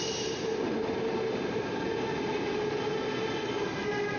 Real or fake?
real